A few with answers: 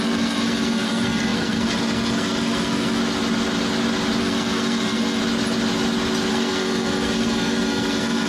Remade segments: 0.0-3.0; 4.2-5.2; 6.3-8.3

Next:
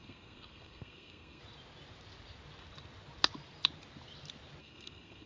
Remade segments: 0.0-1.4; 4.6-5.3

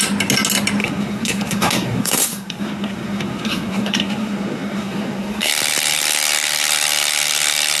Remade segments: 0.8-5.5

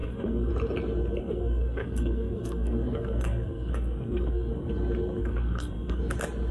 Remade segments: 0.0-0.5; 1.2-4.7; 5.2-6.0

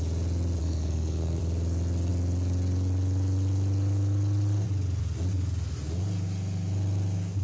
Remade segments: 0.6-1.4

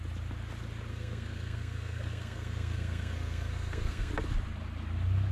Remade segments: 0.9-4.1